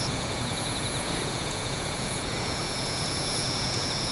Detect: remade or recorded remade